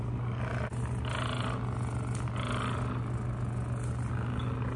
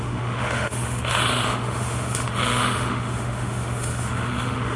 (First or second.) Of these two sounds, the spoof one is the second